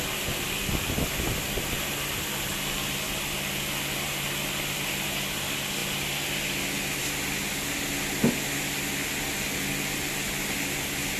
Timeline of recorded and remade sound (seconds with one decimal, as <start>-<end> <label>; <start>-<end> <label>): 0.0-11.2 recorded